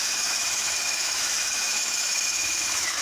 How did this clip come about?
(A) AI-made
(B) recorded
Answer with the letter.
A